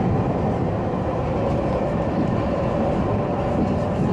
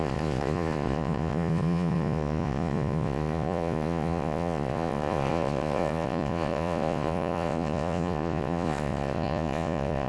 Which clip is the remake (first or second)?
second